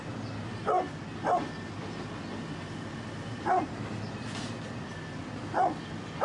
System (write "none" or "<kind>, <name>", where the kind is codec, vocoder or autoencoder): none